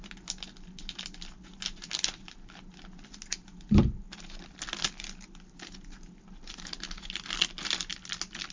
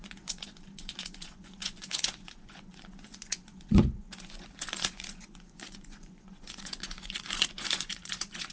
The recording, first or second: first